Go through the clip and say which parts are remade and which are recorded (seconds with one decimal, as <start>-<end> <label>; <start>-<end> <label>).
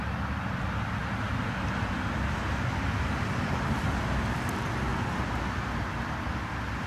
0.0-1.0 remade; 1.0-1.6 recorded; 1.6-4.9 remade; 4.9-6.4 recorded; 6.4-6.9 remade